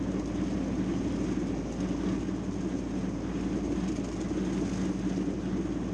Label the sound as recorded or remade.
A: recorded